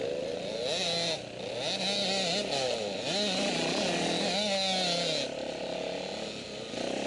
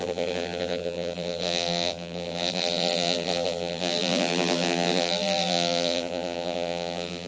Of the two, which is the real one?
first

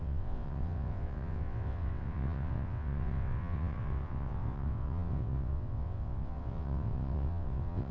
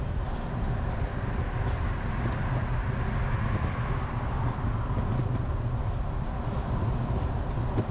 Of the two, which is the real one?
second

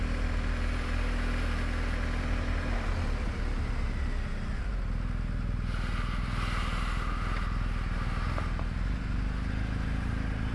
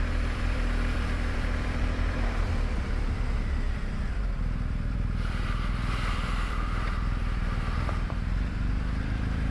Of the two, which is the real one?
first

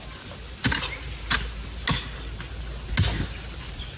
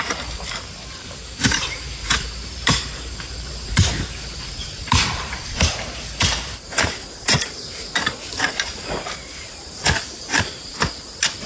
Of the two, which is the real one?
first